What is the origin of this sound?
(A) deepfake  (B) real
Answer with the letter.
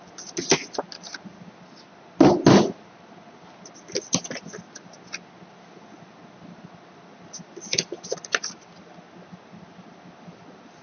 B